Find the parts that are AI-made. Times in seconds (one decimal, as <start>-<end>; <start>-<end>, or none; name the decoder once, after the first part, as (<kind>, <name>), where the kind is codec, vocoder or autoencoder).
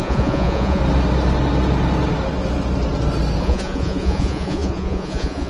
0.0-0.8 (vocoder, Vocos); 3.4-5.5